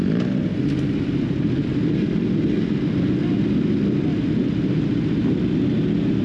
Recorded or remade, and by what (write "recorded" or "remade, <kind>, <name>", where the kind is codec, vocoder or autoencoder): recorded